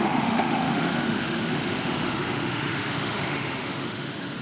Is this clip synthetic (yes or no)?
yes